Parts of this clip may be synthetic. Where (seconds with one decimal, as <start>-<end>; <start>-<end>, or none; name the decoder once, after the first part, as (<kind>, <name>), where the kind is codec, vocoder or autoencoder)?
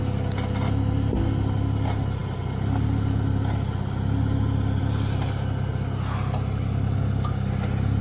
none